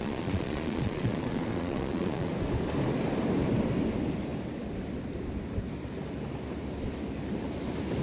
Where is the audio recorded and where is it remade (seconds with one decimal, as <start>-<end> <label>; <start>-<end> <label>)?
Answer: 0.0-2.3 remade; 2.3-8.0 recorded